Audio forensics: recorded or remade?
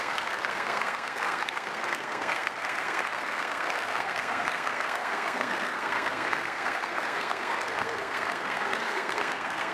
remade